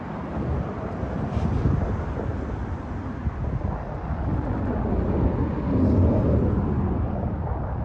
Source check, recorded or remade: recorded